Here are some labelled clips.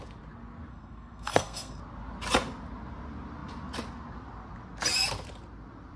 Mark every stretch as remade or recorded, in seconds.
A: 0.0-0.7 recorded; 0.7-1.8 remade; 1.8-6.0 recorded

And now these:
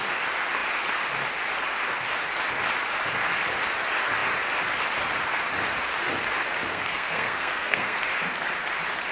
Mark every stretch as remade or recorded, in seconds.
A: 0.0-6.7 recorded; 6.7-8.0 remade; 8.0-9.1 recorded

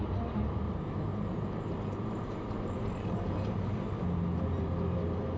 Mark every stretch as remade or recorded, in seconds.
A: 0.0-1.1 recorded; 1.1-4.2 remade; 4.2-5.4 recorded

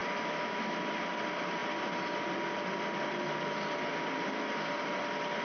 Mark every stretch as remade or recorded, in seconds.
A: 0.0-0.9 remade; 0.9-5.4 recorded

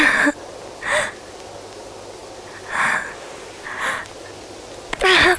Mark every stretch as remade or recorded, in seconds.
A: 0.0-5.4 recorded

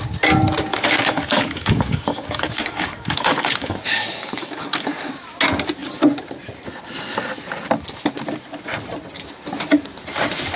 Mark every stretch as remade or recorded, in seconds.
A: 0.0-0.7 recorded; 0.7-5.1 remade; 5.1-10.6 recorded